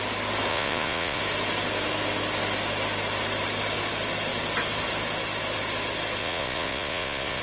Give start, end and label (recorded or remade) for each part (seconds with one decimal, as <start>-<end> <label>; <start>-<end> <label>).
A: 0.0-0.5 recorded; 0.5-1.2 remade; 1.2-6.2 recorded; 6.2-7.4 remade